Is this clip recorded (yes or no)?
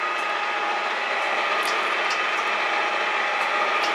yes